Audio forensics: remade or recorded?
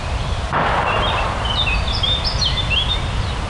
recorded